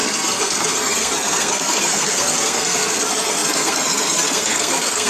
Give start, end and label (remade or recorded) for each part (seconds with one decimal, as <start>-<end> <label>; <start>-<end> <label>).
0.0-5.1 remade